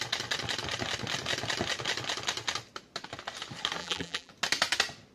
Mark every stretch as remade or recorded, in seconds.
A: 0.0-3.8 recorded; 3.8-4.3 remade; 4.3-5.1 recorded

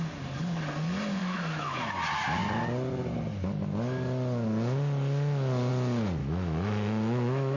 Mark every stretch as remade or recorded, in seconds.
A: 0.0-1.2 recorded; 1.2-1.8 remade; 1.8-6.2 recorded; 6.2-7.6 remade

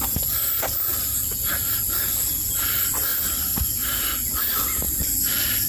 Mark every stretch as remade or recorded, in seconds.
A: 0.0-5.7 recorded

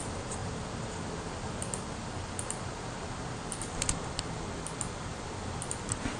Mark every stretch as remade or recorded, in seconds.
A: 0.0-6.2 recorded

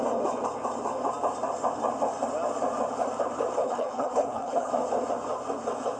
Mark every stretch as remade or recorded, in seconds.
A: 0.0-3.6 recorded; 3.6-4.7 remade; 4.7-6.0 recorded